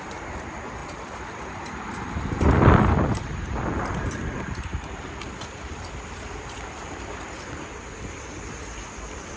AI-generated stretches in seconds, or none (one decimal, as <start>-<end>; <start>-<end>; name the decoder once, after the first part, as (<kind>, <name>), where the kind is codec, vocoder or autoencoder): 0.0-9.4 (vocoder, BigVGAN v2)